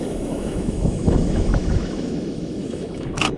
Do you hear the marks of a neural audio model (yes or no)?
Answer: yes